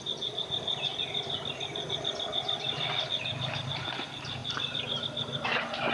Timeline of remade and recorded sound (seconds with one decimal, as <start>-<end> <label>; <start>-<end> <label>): 0.0-0.9 remade; 0.9-3.7 recorded; 3.7-5.9 remade